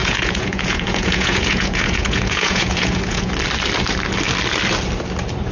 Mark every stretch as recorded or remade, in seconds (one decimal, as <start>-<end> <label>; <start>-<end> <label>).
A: 0.0-3.3 remade; 3.3-5.5 recorded